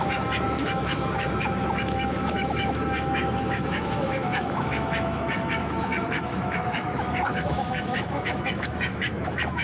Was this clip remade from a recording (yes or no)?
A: yes